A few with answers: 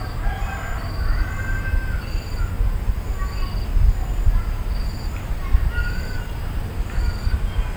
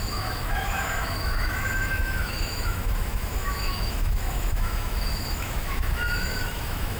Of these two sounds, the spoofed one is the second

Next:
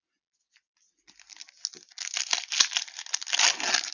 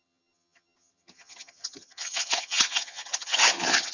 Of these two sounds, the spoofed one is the second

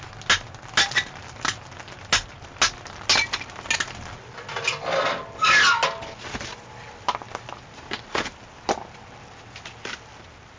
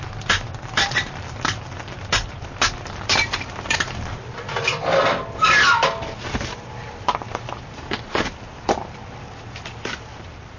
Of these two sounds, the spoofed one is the second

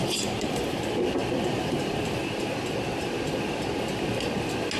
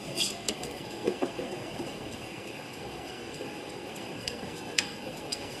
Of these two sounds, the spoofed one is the second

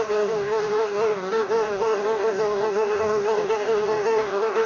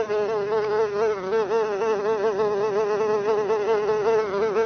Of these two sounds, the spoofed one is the first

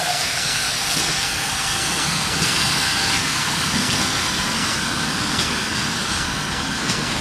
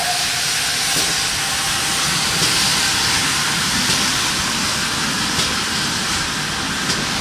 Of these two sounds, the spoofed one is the first